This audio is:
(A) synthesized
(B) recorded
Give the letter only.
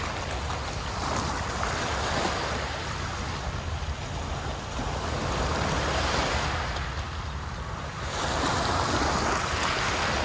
B